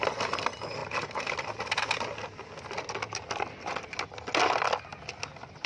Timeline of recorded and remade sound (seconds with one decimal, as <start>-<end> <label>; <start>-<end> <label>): 0.0-5.7 recorded